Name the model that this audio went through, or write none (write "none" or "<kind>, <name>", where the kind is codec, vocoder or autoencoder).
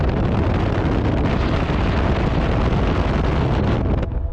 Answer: none